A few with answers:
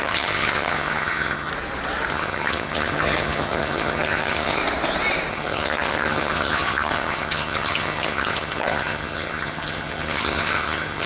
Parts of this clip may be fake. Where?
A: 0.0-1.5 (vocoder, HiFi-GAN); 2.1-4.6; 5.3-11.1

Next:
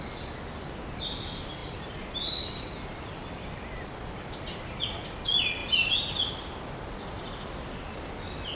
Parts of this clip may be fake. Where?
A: none

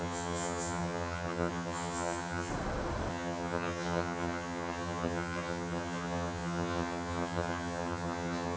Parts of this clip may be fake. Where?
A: 0.0-2.5 (vocoder, HiFi-GAN); 3.1-8.6

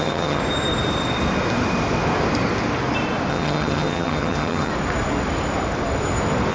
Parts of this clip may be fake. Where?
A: 0.0-0.4 (vocoder, HiFi-GAN); 3.3-4.7

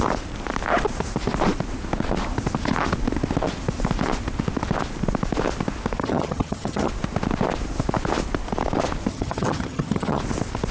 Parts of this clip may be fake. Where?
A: 6.0-6.9 (vocoder, HiFi-GAN); 9.1-10.2

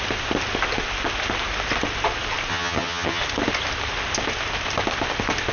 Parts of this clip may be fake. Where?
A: 2.5-3.2 (vocoder, HiFi-GAN)

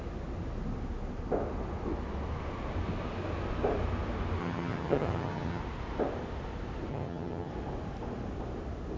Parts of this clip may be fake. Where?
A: 4.4-5.6 (vocoder, HiFi-GAN); 6.9-7.5

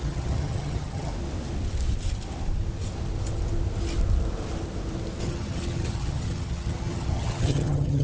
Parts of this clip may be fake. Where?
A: 0.0-1.1 (vocoder, HiFi-GAN); 5.2-8.0